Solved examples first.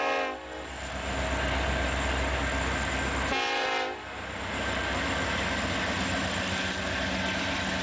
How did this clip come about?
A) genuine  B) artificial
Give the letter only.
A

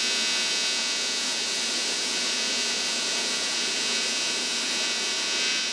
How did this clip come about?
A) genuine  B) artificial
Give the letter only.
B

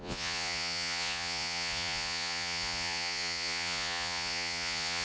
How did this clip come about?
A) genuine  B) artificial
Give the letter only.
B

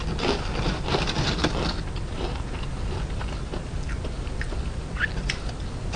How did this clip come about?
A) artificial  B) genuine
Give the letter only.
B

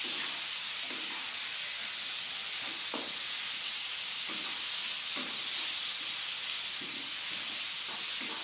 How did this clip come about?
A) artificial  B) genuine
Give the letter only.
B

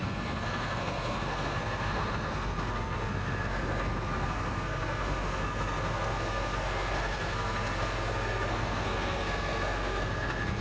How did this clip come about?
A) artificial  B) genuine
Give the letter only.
A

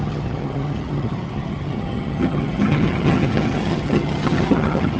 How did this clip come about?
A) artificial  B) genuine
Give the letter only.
A